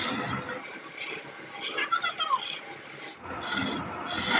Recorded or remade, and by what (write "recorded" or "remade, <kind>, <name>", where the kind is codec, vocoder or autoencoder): recorded